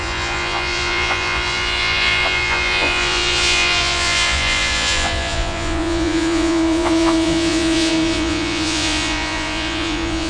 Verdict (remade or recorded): remade